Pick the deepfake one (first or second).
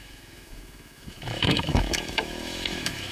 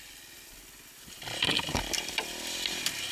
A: first